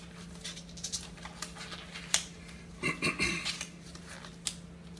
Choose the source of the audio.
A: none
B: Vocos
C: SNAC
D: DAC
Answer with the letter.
A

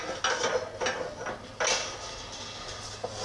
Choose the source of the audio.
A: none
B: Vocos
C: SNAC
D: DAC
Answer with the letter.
A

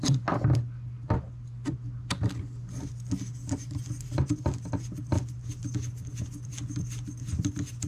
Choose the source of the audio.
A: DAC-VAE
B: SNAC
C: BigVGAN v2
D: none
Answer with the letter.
D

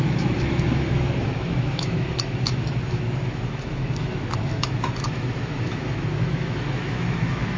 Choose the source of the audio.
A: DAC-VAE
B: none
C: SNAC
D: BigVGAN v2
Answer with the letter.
A